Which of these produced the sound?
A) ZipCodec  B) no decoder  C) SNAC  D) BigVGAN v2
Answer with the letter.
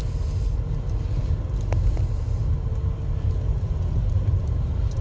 B